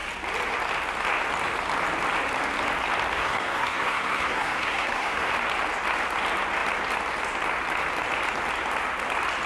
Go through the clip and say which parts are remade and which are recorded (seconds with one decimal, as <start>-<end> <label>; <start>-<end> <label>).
0.0-3.1 recorded; 3.1-5.3 remade; 5.3-9.5 recorded